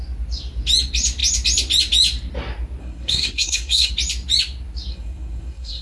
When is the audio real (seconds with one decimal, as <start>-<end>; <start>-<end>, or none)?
0.0-2.8; 3.9-4.9